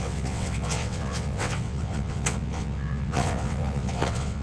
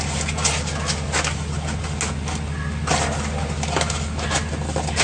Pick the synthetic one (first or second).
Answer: first